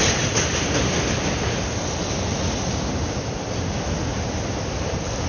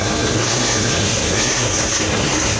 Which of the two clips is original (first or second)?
first